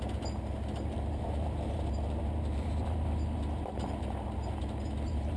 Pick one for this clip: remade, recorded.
remade